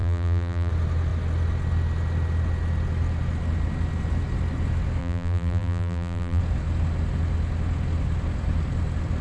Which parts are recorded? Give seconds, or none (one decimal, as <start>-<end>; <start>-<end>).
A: 0.7-5.0; 6.4-9.2